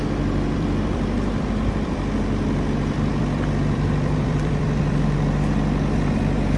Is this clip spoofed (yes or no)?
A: yes